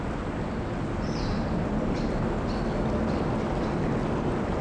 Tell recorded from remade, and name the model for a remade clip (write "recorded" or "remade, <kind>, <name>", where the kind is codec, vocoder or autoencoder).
recorded